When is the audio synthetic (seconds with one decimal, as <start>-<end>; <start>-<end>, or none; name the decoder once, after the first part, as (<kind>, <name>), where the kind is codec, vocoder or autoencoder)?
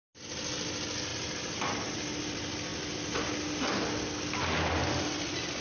1.1-1.9 (vocoder, BigVGAN v2)